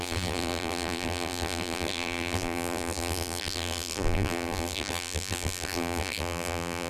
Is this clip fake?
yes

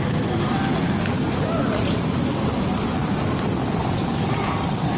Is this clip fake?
no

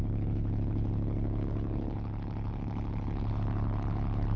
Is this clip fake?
yes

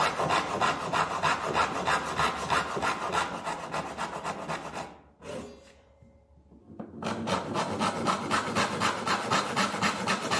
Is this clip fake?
no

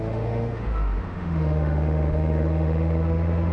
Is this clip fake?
yes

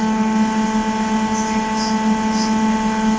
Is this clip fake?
no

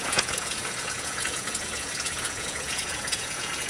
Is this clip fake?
yes